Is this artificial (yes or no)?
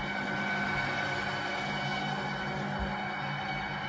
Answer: no